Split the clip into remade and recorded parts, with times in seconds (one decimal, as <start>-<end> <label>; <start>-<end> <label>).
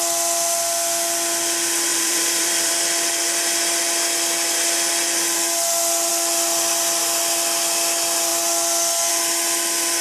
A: 0.0-1.9 recorded; 1.9-2.7 remade; 2.7-10.0 recorded